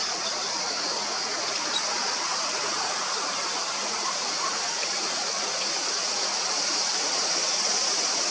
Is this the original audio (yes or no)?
no